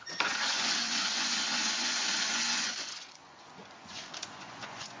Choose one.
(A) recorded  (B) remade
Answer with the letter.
B